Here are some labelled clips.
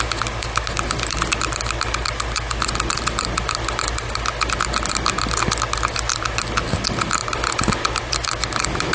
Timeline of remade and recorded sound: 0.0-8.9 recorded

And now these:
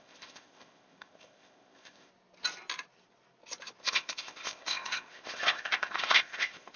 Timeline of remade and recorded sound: 0.0-2.1 remade; 2.1-3.8 recorded; 3.8-6.8 remade